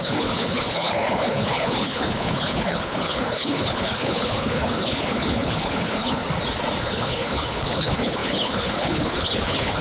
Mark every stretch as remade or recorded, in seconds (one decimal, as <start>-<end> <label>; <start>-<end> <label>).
0.0-6.2 remade; 6.2-6.8 recorded; 6.8-9.8 remade